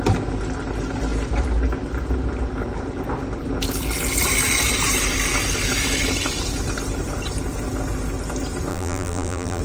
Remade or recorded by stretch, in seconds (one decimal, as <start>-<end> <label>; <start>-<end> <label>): 0.0-8.7 recorded; 8.7-9.6 remade